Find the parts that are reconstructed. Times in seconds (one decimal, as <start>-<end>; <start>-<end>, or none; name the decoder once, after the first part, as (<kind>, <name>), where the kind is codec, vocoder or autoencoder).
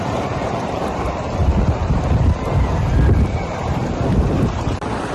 0.0-1.4 (vocoder, BigVGAN v2); 3.5-5.1